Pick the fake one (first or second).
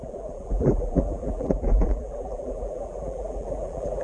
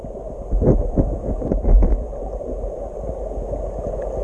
first